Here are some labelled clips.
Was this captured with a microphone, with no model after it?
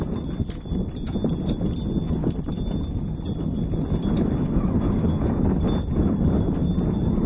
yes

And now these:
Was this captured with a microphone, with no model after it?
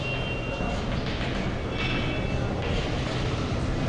yes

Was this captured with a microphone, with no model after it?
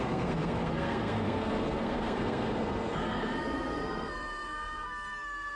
no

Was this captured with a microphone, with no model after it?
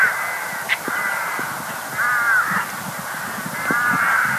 yes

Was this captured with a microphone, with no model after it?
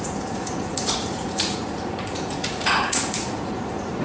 no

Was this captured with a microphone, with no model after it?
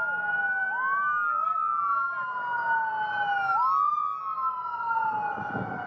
yes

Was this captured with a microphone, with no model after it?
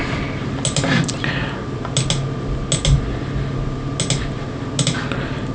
yes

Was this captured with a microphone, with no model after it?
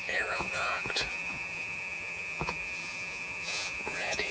no